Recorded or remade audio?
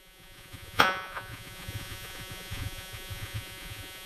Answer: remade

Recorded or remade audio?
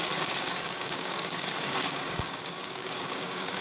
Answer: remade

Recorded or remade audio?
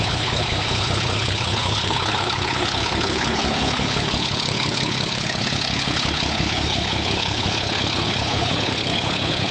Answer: remade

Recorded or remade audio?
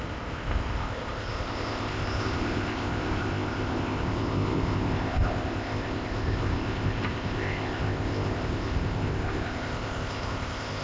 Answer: remade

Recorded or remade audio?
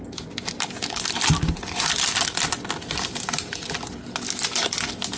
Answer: recorded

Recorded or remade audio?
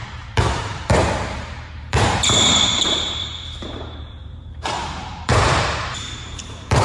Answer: remade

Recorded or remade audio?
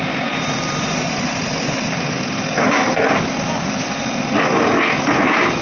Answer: recorded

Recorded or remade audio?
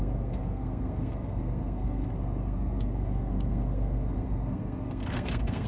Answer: remade